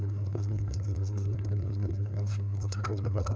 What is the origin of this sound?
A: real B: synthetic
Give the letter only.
B